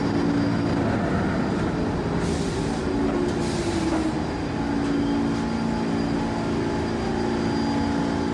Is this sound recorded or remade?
recorded